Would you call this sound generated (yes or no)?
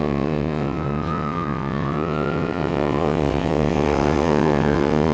yes